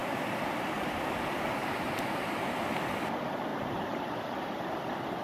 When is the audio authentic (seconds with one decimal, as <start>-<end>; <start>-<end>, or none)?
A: 0.0-1.6; 2.5-3.5; 4.7-5.2